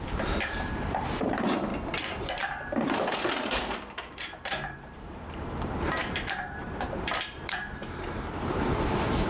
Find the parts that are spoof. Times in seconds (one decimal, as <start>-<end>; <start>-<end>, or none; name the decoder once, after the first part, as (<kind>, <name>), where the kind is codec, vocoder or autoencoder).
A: 0.0-1.7 (vocoder, BigVGAN v2); 2.2-9.3